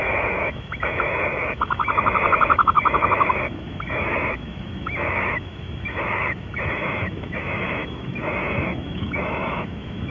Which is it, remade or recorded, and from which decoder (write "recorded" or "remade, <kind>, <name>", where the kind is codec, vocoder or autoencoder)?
remade, autoencoder, DAC-VAE